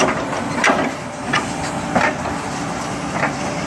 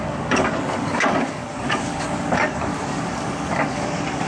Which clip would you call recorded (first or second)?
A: first